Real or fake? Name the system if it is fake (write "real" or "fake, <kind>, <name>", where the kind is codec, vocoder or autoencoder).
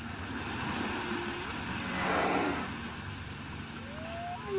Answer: real